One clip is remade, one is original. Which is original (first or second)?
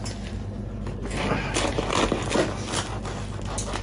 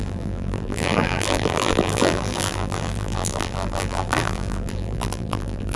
first